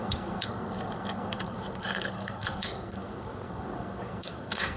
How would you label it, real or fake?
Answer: fake